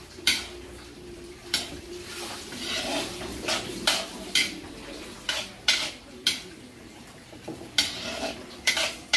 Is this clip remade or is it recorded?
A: remade